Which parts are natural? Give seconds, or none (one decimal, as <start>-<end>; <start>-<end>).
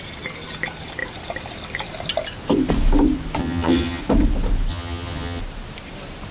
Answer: 0.0-3.4; 4.0-4.7; 5.4-6.3